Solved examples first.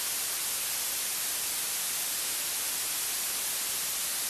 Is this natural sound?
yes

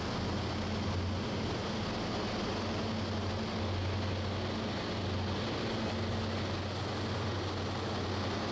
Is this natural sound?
yes